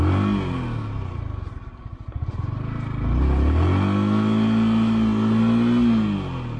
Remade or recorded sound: recorded